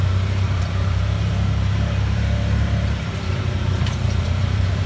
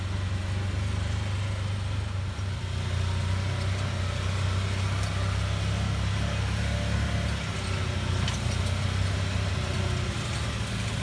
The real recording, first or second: second